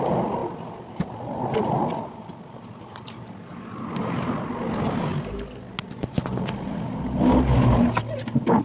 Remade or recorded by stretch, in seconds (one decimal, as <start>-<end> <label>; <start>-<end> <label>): 0.0-8.6 recorded